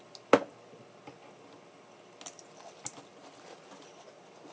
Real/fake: real